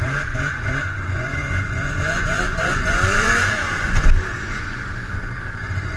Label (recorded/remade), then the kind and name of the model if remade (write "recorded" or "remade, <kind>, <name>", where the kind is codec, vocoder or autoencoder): remade, vocoder, Vocos